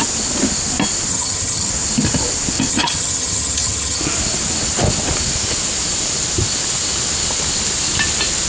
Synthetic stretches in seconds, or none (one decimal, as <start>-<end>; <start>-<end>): 1.1-1.7; 2.7-4.0